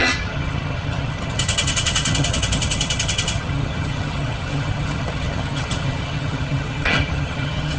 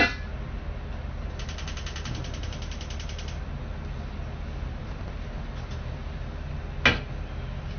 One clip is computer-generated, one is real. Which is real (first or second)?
second